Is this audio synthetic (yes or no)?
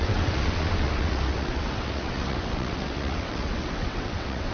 yes